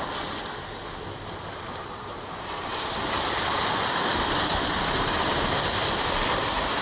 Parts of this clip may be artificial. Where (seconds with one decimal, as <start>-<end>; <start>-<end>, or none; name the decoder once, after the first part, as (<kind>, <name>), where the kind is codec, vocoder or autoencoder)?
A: none